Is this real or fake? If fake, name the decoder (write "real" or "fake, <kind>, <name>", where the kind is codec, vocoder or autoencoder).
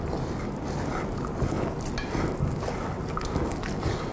real